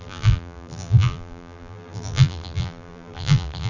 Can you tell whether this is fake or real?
fake